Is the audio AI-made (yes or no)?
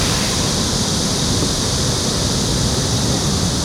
yes